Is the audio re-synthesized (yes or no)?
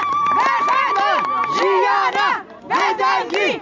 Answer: no